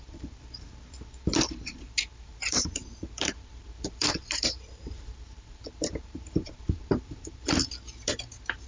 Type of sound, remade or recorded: remade